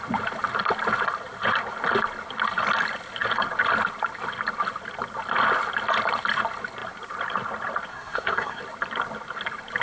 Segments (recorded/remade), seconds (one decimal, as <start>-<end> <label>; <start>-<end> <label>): 0.0-7.9 recorded; 7.9-8.6 remade; 8.6-9.8 recorded